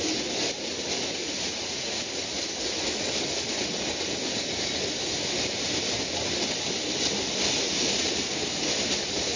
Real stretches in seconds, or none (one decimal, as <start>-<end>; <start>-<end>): 0.0-1.2; 2.0-9.4